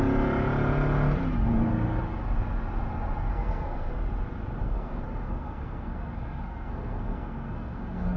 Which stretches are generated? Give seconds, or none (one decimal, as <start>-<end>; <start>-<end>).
3.3-3.9; 4.6-8.2